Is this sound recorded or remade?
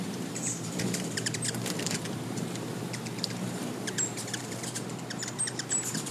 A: remade